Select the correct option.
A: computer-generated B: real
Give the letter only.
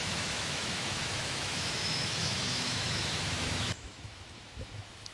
A